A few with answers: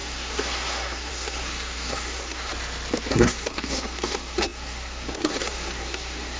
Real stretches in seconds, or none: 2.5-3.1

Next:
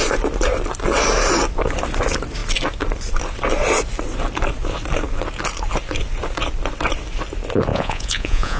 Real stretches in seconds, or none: 0.0-7.7

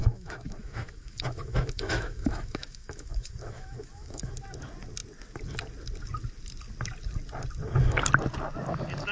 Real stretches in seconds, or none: 4.3-9.1

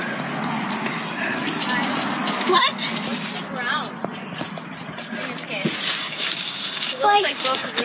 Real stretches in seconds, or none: 0.0-6.0